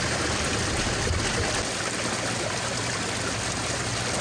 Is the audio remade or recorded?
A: recorded